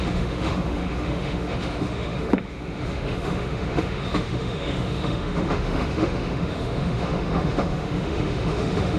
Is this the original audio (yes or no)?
no